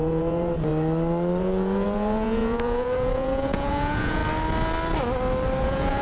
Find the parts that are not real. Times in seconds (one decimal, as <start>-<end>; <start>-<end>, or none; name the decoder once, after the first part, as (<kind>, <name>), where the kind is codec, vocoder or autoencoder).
0.0-0.7 (vocoder, Vocos); 1.4-4.2; 5.6-6.0

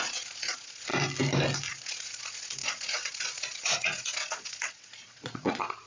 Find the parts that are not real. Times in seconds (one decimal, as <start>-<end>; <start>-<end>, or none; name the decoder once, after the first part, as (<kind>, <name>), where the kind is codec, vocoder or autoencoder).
0.0-0.9 (vocoder, Vocos); 1.7-5.9

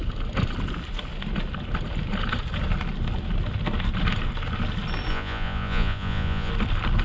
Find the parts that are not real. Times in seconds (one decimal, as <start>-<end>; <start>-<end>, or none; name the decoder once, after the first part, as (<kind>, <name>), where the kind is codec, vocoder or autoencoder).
5.1-6.5 (vocoder, Vocos)

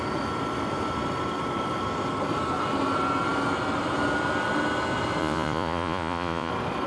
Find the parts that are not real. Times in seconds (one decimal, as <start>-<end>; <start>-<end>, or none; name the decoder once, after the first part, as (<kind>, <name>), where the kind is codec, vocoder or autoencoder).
5.2-6.5 (vocoder, Vocos)

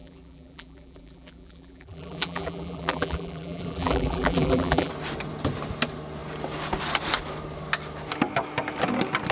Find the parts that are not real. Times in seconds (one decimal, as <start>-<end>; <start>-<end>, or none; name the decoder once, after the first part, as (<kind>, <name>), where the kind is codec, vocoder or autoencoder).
0.0-4.9 (vocoder, BigVGAN v2)

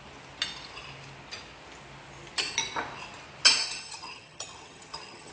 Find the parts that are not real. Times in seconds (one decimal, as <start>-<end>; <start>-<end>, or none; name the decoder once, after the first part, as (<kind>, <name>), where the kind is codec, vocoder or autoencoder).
3.6-5.3 (vocoder, HiFi-GAN)

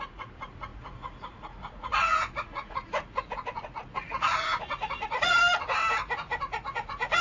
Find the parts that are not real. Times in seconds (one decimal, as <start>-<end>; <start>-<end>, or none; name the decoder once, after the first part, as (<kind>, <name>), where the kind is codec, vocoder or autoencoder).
0.0-5.4 (vocoder, Vocos); 6.4-7.2